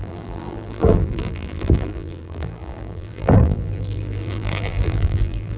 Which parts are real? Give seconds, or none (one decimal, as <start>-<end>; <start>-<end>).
none